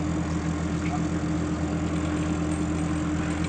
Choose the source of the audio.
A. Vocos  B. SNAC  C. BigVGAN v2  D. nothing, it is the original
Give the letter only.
D